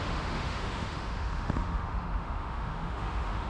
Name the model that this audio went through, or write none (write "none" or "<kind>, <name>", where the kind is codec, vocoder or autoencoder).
autoencoder, DAC-VAE